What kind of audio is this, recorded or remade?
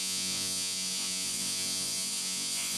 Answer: remade